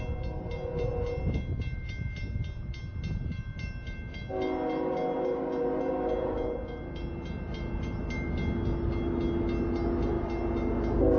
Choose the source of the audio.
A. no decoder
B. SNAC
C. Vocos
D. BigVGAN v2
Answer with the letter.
A